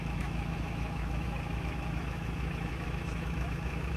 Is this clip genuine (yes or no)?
no